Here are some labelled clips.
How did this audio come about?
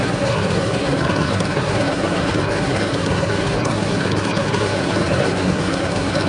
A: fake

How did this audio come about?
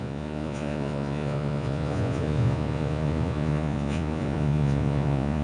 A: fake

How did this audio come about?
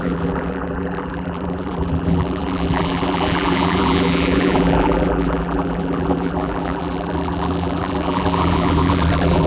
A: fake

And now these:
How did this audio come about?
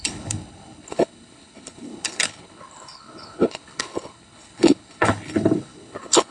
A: fake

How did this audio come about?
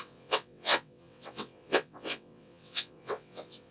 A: fake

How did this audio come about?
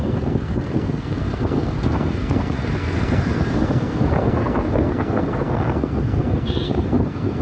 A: fake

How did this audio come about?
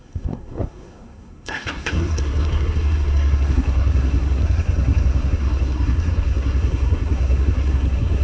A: fake